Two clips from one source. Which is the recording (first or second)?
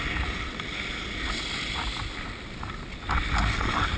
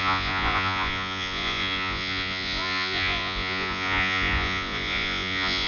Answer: first